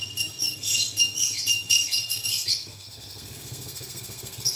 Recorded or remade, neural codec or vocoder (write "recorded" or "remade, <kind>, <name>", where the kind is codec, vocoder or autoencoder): remade, codec, SNAC